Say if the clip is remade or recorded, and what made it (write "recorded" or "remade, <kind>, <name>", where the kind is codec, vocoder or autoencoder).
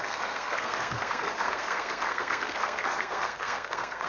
remade, codec, SNAC